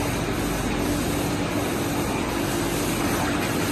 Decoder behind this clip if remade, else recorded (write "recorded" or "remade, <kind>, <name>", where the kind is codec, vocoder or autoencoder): recorded